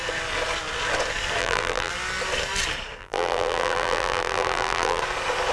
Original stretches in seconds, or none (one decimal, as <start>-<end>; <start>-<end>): 0.0-1.4; 1.9-3.0; 5.0-5.5